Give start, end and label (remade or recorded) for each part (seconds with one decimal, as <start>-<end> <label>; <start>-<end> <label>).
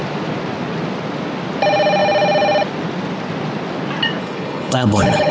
0.0-4.2 recorded; 4.2-5.3 remade